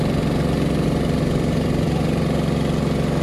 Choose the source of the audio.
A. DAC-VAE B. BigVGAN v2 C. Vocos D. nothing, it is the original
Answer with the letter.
D